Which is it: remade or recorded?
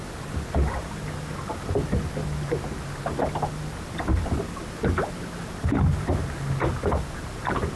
recorded